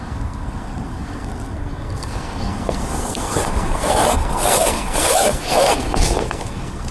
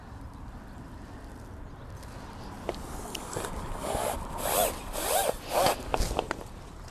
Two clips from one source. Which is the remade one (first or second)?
first